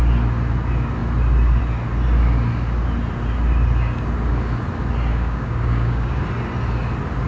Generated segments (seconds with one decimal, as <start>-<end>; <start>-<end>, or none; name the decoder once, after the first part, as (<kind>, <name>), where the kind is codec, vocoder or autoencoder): 5.1-6.2 (codec, DAC)